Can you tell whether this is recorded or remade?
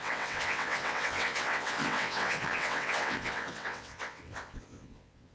remade